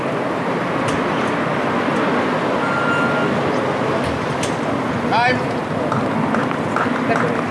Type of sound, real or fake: real